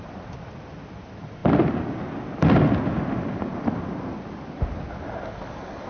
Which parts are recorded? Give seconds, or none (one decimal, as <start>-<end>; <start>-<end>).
0.0-5.9